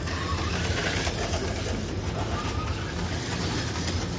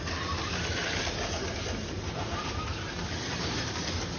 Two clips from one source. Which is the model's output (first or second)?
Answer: second